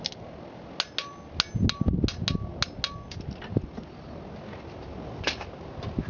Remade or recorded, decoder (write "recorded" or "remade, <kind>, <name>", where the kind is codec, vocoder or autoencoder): recorded